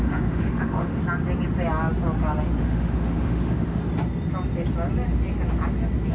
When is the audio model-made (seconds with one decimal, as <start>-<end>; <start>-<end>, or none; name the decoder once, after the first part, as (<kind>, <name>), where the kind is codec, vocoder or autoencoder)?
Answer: 0.0-1.0 (autoencoder, DAC-VAE); 2.6-3.8